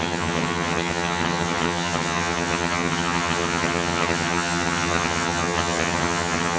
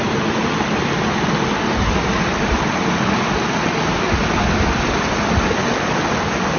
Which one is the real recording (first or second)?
second